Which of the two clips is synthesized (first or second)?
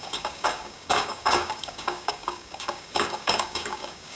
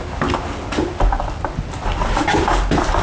first